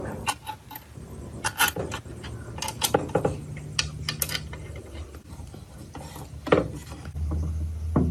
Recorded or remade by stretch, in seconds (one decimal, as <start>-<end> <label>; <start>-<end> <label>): 0.0-6.8 recorded; 6.8-7.3 remade; 7.3-8.1 recorded